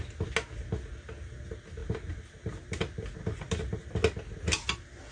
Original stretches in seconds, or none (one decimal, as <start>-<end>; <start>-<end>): 0.0-5.1